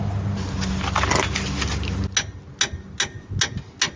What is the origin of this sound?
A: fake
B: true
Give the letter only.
B